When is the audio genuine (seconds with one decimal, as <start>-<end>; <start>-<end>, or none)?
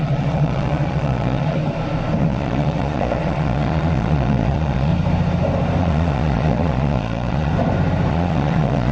1.6-2.2; 4.9-5.8; 7.5-8.1